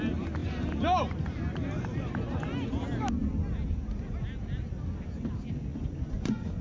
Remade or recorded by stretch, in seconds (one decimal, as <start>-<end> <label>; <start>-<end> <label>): 0.0-5.7 recorded; 5.7-6.6 remade